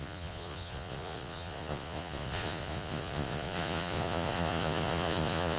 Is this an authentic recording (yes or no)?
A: no